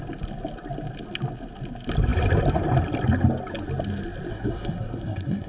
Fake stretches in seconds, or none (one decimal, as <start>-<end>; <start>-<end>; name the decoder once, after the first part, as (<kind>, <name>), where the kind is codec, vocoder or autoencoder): 4.3-5.5 (codec, SNAC)